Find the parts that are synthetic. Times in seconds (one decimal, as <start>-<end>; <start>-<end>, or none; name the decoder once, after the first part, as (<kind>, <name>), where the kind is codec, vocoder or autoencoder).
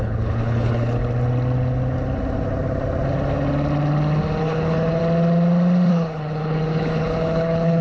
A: 0.0-1.0 (codec, HILCodec); 4.4-5.0; 5.9-7.8